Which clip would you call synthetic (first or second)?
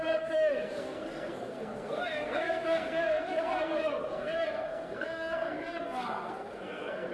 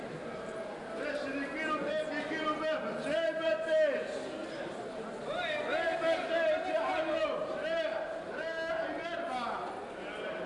first